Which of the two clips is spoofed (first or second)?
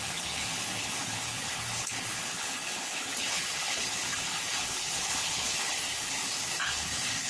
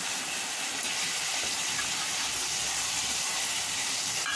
first